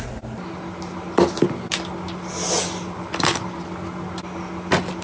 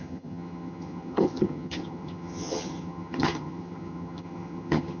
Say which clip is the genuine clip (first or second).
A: first